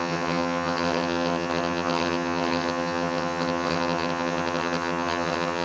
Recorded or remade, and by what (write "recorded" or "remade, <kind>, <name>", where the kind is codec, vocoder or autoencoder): remade, vocoder, HiFi-GAN